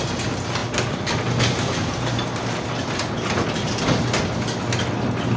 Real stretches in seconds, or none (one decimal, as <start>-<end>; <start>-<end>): 0.0-5.4